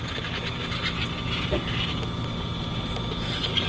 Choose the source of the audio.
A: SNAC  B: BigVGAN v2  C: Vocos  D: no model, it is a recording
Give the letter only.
D